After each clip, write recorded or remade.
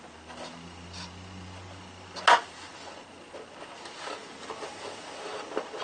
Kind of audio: recorded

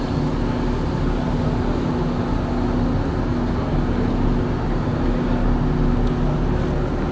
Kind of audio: recorded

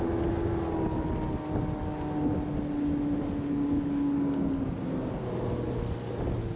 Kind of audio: recorded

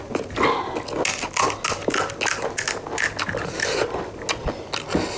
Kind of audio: recorded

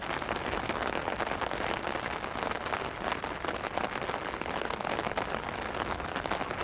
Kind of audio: recorded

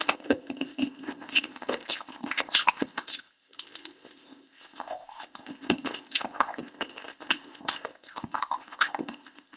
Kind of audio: remade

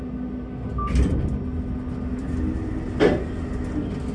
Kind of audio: recorded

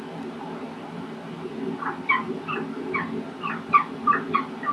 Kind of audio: recorded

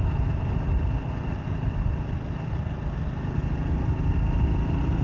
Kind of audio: recorded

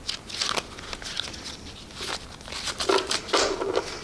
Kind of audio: recorded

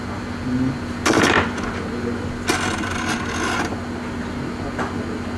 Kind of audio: recorded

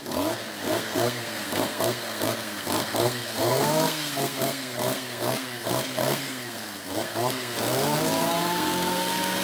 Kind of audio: remade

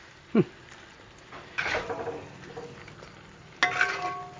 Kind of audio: recorded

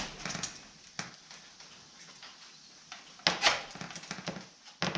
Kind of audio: recorded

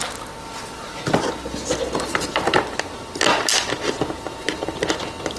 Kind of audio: recorded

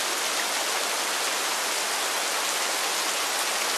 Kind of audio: recorded